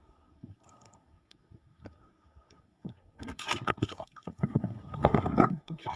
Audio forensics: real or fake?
fake